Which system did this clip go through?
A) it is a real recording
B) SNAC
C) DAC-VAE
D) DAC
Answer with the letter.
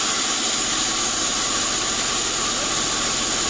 A